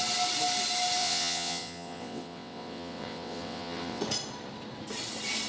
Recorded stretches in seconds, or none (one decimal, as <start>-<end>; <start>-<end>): 0.0-1.0; 4.0-5.5